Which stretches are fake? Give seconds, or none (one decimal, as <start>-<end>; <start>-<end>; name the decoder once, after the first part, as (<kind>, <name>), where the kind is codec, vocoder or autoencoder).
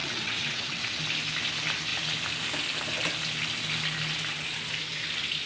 0.0-1.0 (vocoder, WaveNeXt)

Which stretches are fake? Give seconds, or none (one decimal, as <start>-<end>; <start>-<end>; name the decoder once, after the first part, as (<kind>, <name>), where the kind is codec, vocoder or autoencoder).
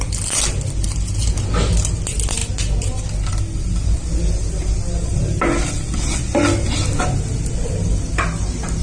none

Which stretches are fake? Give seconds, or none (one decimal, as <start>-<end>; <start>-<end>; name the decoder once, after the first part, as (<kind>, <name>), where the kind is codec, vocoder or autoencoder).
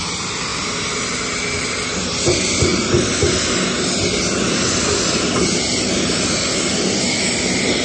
none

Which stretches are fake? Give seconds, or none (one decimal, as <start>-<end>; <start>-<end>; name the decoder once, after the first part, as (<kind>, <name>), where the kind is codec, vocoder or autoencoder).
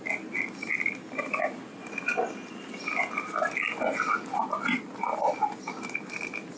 none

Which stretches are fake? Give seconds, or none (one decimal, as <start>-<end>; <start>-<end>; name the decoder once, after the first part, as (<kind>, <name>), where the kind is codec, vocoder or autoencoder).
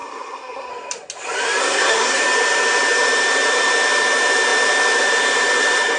0.0-0.7 (codec, SNAC); 1.6-2.2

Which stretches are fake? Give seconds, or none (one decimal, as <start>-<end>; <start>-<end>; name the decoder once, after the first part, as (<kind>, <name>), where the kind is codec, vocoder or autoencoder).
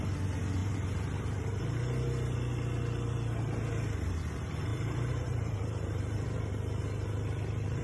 0.6-1.6 (vocoder, BigVGAN v2); 4.7-6.5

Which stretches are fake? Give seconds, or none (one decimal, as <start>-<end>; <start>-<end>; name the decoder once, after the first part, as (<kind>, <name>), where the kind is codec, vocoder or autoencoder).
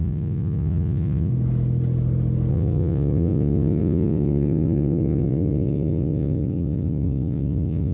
0.0-1.3 (vocoder, Vocos); 2.5-7.9